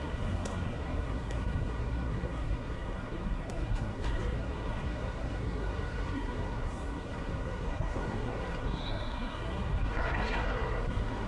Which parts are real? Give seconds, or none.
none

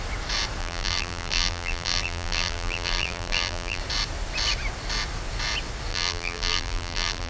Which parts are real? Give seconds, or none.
0.0-0.6; 3.8-5.9

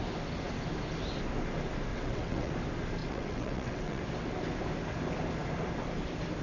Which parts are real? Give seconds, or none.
0.0-1.9; 2.5-3.0; 4.0-6.4

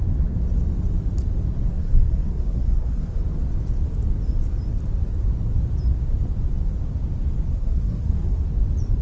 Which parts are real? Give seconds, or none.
0.0-1.8; 3.2-7.5; 8.4-9.0